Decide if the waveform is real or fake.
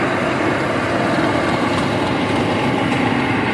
real